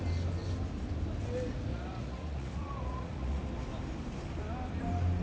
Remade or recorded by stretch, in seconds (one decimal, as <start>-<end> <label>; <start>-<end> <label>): 0.0-1.7 recorded; 1.7-3.4 remade; 3.4-5.2 recorded